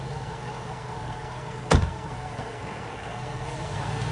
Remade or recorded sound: remade